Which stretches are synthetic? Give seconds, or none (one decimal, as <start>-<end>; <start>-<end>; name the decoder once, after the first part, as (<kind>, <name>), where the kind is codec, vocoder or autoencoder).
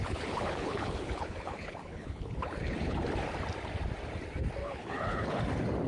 0.0-3.0 (codec, HILCodec); 4.6-5.4